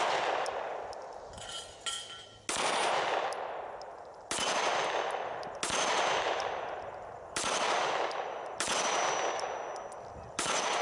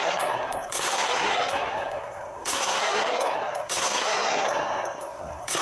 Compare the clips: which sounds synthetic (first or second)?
second